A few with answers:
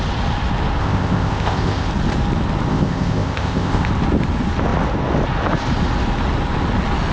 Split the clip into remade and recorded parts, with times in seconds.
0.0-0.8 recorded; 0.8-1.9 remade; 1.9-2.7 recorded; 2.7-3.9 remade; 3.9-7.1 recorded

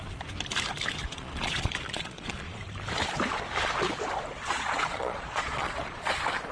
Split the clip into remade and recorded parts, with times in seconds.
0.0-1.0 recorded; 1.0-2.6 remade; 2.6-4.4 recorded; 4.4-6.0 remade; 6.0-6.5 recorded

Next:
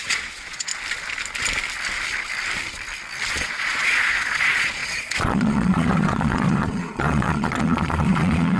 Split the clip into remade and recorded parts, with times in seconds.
0.0-0.7 remade; 0.7-3.3 recorded; 3.3-8.6 remade

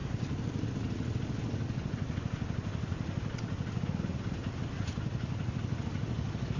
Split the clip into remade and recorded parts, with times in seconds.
0.0-0.7 remade; 0.7-6.6 recorded

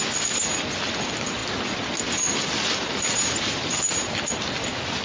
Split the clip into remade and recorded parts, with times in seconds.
0.0-5.0 recorded

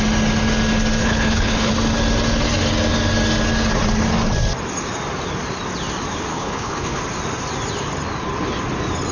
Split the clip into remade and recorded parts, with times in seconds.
0.0-1.0 recorded; 1.0-1.7 remade; 1.7-6.3 recorded; 6.3-7.0 remade; 7.0-9.1 recorded

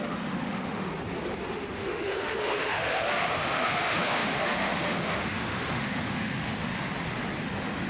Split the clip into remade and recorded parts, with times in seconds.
0.0-0.9 remade; 0.9-1.5 recorded; 1.5-6.7 remade; 6.7-7.4 recorded; 7.4-7.9 remade

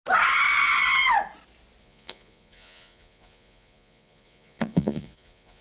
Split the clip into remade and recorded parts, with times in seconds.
0.0-1.8 recorded; 1.8-5.6 remade